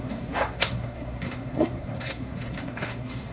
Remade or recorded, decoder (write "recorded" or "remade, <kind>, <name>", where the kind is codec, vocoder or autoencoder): remade, codec, SNAC